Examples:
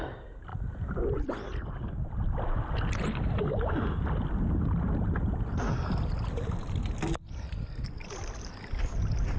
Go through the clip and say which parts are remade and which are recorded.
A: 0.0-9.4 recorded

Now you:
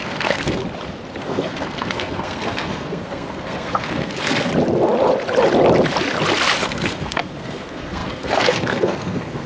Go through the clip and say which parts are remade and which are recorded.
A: 0.0-0.6 remade; 0.6-1.2 recorded; 1.2-4.5 remade; 4.5-6.6 recorded; 6.6-9.5 remade

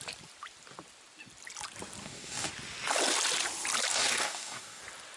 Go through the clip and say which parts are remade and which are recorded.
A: 0.0-2.0 recorded; 2.0-2.5 remade; 2.5-3.9 recorded; 3.9-4.8 remade; 4.8-5.2 recorded

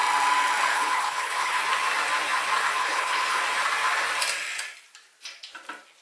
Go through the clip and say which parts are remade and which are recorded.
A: 0.0-0.7 recorded; 0.7-1.6 remade; 1.6-2.8 recorded; 2.8-3.4 remade; 3.4-6.0 recorded